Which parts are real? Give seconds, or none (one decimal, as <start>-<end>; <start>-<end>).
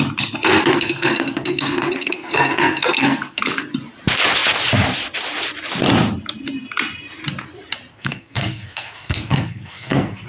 0.0-0.7; 3.4-7.9